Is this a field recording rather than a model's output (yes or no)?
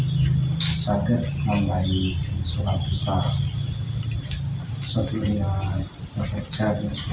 yes